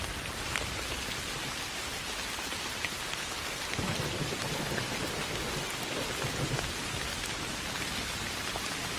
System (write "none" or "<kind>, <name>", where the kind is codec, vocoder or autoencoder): none